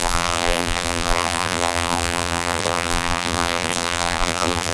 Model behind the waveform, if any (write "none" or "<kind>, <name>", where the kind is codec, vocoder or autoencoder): vocoder, BigVGAN v2